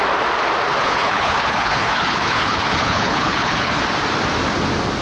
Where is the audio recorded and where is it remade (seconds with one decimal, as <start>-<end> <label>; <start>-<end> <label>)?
0.0-0.8 recorded; 0.8-3.8 remade; 3.8-5.0 recorded